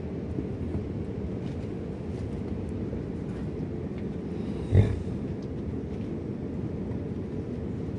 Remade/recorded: recorded